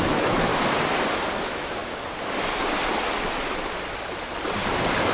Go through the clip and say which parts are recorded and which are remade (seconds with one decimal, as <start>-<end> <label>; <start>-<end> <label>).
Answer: 0.0-0.5 remade; 0.5-1.4 recorded; 1.4-1.8 remade; 1.8-5.1 recorded